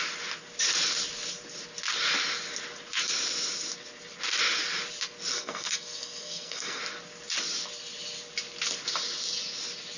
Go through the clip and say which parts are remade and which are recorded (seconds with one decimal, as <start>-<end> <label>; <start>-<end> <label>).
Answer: 0.0-5.3 recorded; 5.3-6.8 remade; 6.8-10.0 recorded